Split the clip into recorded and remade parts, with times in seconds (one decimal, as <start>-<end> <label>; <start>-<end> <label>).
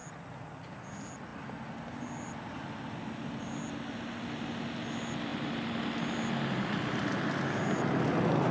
0.0-8.5 recorded